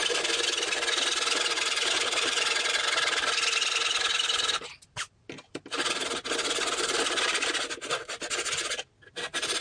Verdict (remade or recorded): recorded